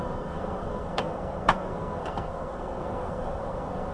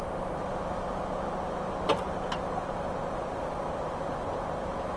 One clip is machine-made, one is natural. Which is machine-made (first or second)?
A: first